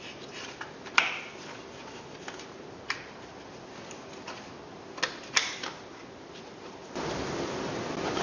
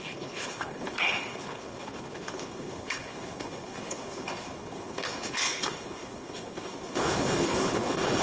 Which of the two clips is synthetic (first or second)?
second